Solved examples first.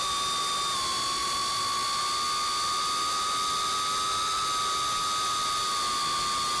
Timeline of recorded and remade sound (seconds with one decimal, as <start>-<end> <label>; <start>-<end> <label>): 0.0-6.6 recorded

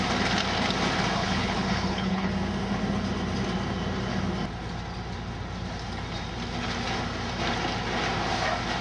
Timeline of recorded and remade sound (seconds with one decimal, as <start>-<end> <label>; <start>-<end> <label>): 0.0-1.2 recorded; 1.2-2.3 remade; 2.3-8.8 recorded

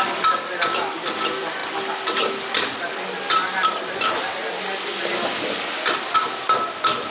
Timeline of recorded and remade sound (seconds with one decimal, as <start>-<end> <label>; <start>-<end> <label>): 0.0-7.1 recorded